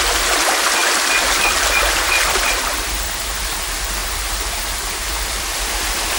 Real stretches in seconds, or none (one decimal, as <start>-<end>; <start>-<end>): 0.8-1.8